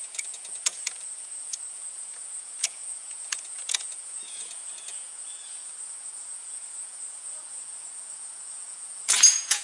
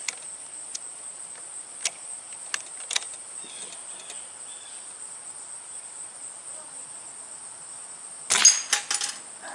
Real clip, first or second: second